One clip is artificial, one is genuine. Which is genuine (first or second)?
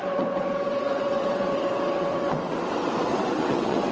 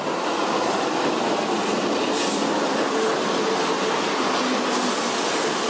second